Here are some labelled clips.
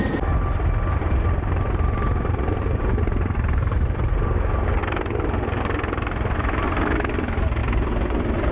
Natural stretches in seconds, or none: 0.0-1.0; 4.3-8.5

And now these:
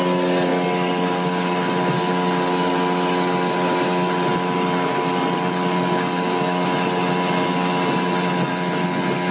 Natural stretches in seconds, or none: 0.0-9.3

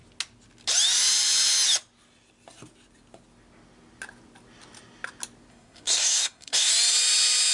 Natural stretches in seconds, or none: 0.0-5.5; 6.7-7.5

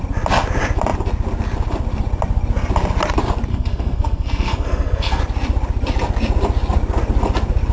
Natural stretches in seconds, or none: 0.0-3.5; 5.2-7.7

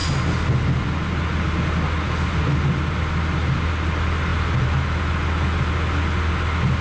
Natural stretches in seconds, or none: 0.0-6.8